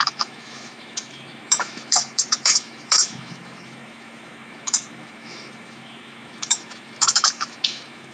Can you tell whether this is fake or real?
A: fake